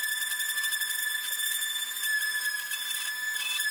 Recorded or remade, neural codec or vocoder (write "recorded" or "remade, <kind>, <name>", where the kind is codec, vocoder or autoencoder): recorded